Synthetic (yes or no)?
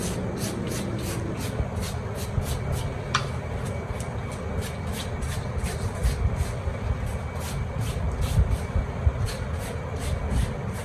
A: no